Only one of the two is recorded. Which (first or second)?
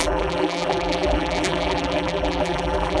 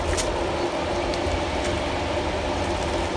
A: second